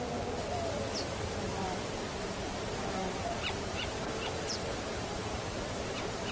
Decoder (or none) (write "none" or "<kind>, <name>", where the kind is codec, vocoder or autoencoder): vocoder, BigVGAN v2